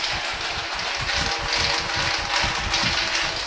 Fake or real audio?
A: real